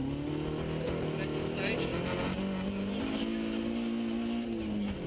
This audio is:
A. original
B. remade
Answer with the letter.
A